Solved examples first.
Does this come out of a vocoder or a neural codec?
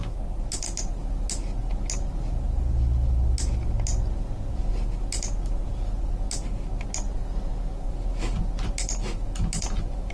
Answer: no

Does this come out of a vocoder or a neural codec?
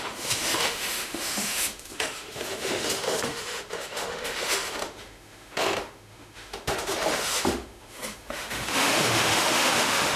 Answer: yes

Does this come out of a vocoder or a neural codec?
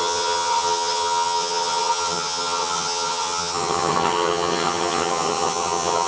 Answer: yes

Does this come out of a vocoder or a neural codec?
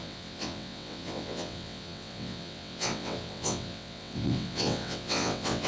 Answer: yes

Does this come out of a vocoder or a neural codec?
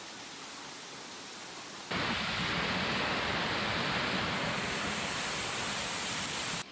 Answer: no